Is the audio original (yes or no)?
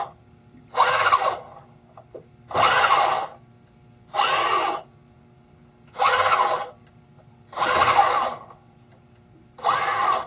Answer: yes